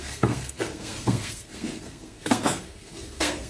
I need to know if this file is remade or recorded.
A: remade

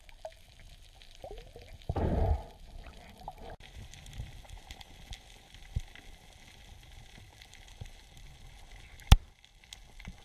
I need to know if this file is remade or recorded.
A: recorded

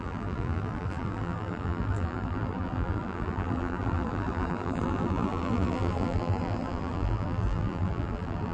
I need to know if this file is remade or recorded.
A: remade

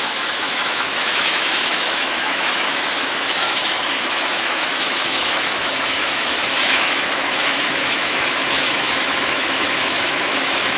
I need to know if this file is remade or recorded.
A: remade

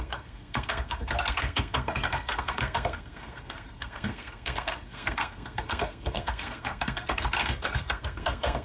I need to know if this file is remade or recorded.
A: remade